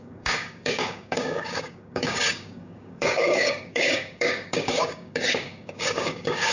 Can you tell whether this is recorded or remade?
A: remade